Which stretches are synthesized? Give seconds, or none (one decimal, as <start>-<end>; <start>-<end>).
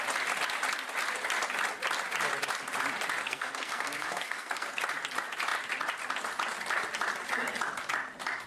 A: 3.2-4.8